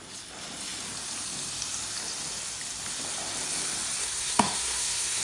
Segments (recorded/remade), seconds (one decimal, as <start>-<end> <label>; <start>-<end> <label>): 0.0-4.0 recorded; 4.0-5.2 remade